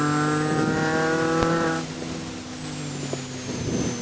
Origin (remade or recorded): recorded